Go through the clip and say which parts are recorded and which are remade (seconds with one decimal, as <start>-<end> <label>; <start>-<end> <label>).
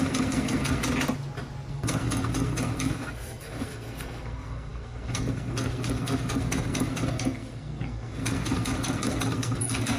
0.0-0.8 remade; 0.8-1.7 recorded; 1.7-10.0 remade